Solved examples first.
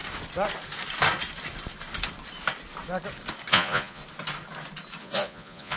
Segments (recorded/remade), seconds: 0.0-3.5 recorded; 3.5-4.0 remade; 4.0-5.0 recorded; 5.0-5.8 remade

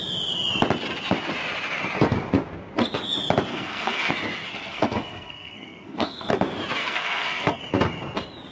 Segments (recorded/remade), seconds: 0.0-3.5 recorded; 3.5-4.1 remade; 4.1-4.5 recorded; 4.5-6.3 remade; 6.3-6.8 recorded; 6.8-7.6 remade; 7.6-8.5 recorded

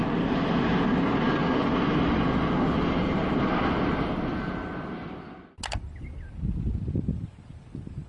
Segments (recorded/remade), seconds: 0.0-1.4 recorded; 1.4-2.1 remade; 2.1-8.1 recorded

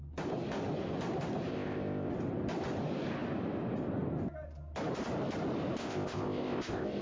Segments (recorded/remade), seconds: 0.0-1.5 recorded; 1.5-2.1 remade; 2.1-5.8 recorded; 5.8-7.0 remade

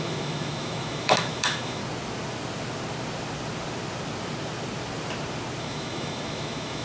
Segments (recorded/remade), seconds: 0.0-1.8 remade; 1.8-5.6 recorded; 5.6-6.8 remade

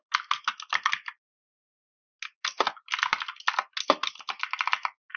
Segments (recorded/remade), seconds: 0.0-5.2 recorded

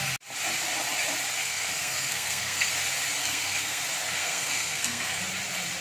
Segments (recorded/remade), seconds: 0.0-1.4 recorded; 1.4-2.7 remade; 2.7-3.2 recorded; 3.2-3.8 remade; 3.8-4.2 recorded; 4.2-5.2 remade; 5.2-5.8 recorded

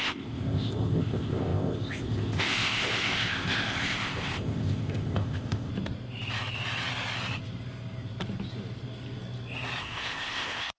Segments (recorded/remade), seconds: 0.0-5.7 remade; 5.7-9.8 recorded; 9.8-10.8 remade